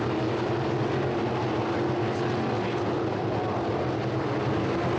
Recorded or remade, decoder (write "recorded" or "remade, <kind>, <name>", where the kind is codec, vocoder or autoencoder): recorded